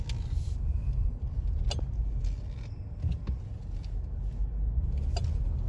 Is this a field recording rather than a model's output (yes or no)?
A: yes